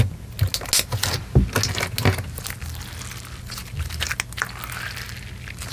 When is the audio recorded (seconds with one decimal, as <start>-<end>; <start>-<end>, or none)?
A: 0.0-5.7